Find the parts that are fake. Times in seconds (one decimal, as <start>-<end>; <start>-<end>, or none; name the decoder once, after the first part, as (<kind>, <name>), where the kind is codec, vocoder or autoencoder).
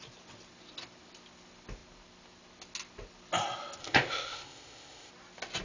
3.8-5.1 (codec, ZipCodec)